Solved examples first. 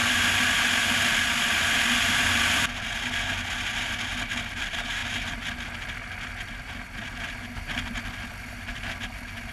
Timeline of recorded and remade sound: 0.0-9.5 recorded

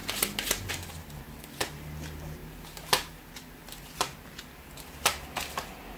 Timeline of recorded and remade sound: 0.0-2.4 recorded; 2.4-3.3 remade; 3.3-6.0 recorded